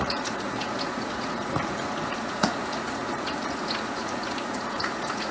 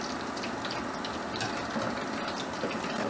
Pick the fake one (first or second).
first